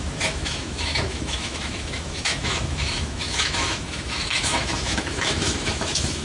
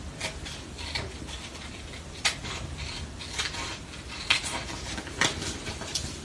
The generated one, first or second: first